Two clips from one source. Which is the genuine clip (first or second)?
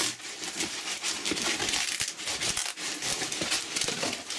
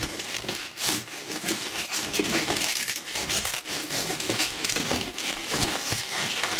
first